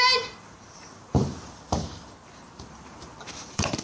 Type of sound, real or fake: fake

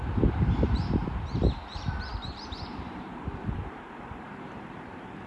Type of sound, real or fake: fake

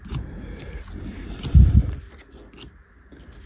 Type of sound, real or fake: real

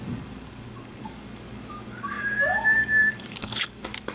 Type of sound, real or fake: fake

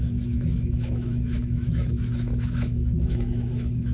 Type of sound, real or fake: fake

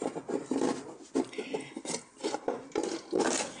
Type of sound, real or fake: real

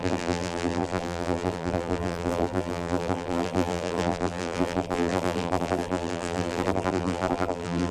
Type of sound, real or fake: fake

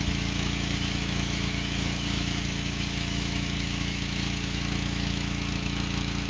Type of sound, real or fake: fake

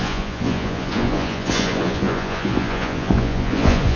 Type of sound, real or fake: fake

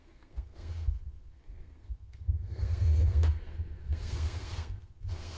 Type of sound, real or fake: fake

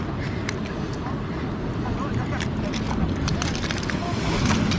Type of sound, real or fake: real